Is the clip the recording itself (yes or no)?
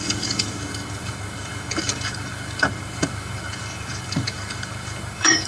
no